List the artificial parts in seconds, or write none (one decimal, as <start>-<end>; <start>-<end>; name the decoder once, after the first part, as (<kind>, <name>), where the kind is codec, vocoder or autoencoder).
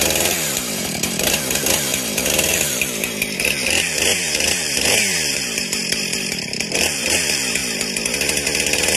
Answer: 0.0-7.6 (vocoder, BigVGAN v2); 8.6-9.0